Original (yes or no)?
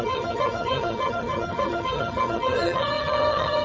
no